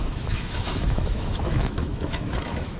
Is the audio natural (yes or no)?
no